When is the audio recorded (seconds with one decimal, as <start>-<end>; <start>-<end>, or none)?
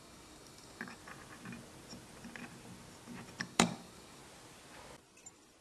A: 1.0-3.4; 4.2-5.6